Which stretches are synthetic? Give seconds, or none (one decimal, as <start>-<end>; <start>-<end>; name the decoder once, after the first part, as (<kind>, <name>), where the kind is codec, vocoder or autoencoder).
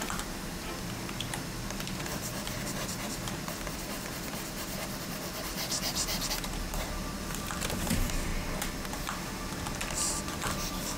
0.0-8.3 (vocoder, BigVGAN v2); 10.3-11.0